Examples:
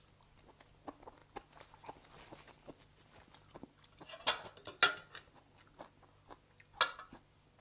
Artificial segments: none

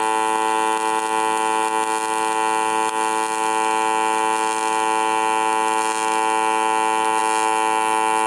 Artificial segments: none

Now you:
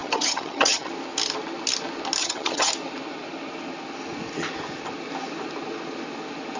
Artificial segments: 0.0-0.9 (vocoder, HiFi-GAN); 2.2-2.7